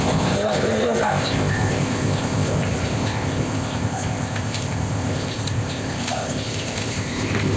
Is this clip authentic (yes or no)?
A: no